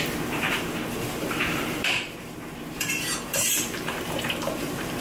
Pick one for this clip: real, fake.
fake